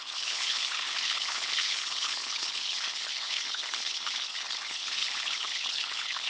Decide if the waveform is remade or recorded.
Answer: remade